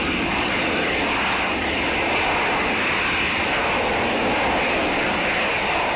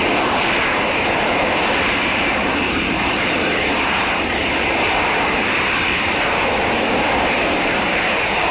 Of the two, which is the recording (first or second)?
first